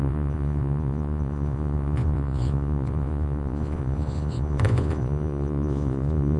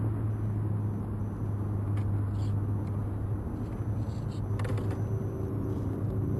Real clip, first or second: second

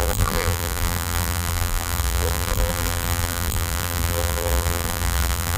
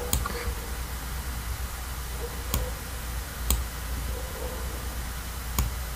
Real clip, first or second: second